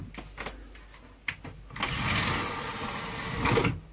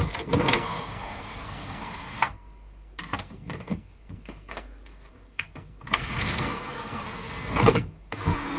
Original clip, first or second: first